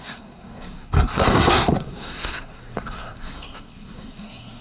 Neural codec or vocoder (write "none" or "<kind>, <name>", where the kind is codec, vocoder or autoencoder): codec, SNAC